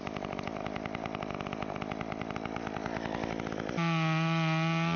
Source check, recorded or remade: recorded